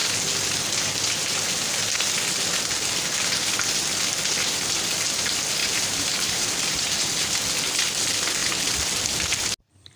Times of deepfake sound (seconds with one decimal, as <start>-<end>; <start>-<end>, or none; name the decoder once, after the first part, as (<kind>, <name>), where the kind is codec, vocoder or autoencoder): 5.6-7.3 (vocoder, BigVGAN v2)